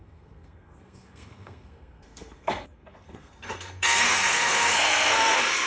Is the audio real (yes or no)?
no